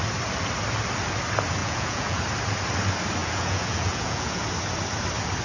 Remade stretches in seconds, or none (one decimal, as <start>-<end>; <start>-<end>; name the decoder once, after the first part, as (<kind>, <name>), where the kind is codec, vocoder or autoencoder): 1.6-2.2 (vocoder, Vocos); 3.2-4.4